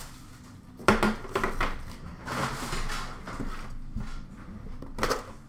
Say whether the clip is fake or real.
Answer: real